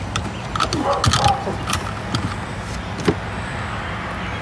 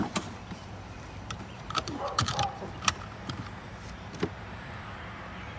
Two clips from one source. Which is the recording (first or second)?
first